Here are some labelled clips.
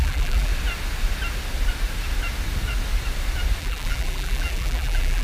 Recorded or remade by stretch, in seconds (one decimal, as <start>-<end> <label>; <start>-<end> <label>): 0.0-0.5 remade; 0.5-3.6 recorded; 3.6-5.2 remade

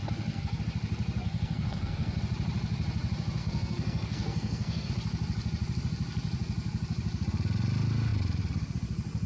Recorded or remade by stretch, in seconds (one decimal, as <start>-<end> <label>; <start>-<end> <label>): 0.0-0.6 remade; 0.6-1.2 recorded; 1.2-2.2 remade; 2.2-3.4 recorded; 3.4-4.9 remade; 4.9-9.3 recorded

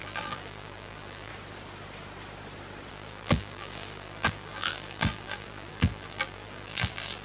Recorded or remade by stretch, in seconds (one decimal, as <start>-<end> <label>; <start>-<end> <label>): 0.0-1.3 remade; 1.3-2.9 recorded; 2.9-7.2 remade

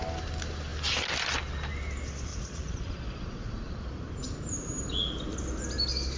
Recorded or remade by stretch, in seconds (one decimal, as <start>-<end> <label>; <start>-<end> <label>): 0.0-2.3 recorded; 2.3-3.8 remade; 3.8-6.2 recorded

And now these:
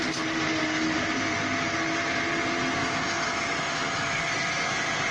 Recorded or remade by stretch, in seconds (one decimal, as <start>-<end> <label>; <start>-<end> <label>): 0.0-2.8 recorded; 2.8-4.3 remade; 4.3-5.1 recorded

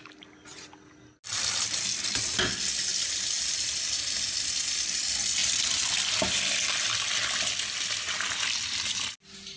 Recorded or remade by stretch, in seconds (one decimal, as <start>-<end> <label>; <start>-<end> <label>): 0.0-9.6 recorded